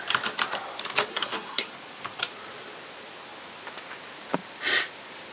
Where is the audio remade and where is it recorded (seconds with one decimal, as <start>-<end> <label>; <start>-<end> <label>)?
0.0-1.1 recorded; 1.1-1.7 remade; 1.7-5.3 recorded

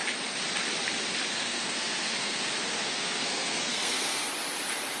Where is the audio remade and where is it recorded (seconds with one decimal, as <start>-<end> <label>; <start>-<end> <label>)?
0.0-1.3 recorded; 1.3-4.3 remade; 4.3-5.0 recorded

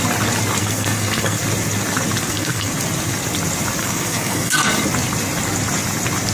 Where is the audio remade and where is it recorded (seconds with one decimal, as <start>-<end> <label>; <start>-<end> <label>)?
0.0-0.6 recorded; 0.6-1.4 remade; 1.4-2.2 recorded; 2.2-2.7 remade; 2.7-3.8 recorded; 3.8-4.7 remade; 4.7-6.3 recorded

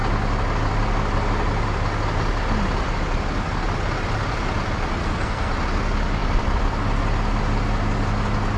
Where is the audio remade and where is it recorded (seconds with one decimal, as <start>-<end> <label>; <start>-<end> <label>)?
0.0-5.0 recorded; 5.0-5.5 remade; 5.5-8.6 recorded

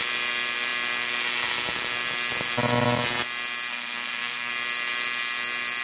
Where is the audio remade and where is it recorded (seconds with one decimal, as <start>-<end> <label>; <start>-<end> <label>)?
0.0-3.7 recorded; 3.7-4.5 remade; 4.5-5.8 recorded

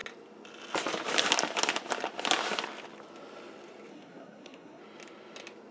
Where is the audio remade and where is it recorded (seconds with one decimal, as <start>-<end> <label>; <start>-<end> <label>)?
0.0-3.9 recorded; 3.9-4.8 remade; 4.8-5.7 recorded